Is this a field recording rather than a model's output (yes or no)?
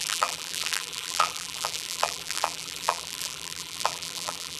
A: no